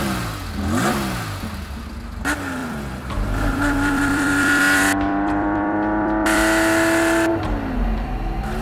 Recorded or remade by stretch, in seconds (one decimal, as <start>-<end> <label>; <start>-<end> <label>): 0.0-2.6 recorded; 2.6-7.3 remade; 7.3-8.6 recorded

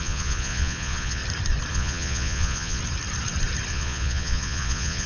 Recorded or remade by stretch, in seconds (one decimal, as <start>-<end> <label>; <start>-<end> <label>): 0.0-1.2 remade; 1.2-1.7 recorded; 1.7-2.8 remade; 2.8-3.7 recorded; 3.7-5.1 remade